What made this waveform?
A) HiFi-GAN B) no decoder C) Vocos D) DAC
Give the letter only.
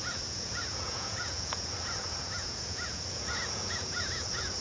C